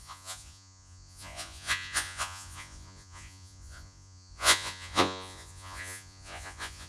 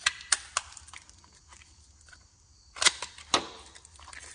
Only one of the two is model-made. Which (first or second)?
first